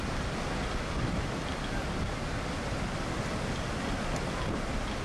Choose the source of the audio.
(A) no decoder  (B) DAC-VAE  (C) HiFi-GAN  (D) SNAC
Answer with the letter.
A